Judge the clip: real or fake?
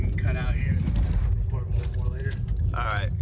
real